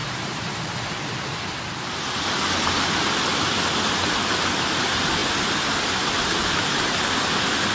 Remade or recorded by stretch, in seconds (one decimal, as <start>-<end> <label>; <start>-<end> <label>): 0.0-7.7 recorded